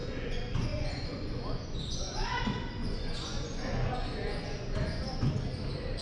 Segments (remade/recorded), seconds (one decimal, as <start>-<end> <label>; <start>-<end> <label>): 0.0-2.4 remade; 2.4-2.8 recorded; 2.8-5.3 remade; 5.3-6.0 recorded